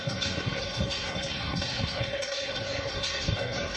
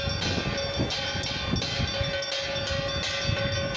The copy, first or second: first